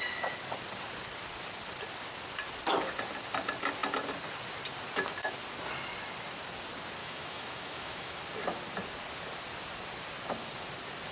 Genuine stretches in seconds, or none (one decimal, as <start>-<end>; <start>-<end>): 0.0-7.0; 8.2-11.1